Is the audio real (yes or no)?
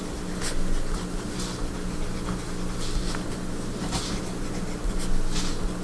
yes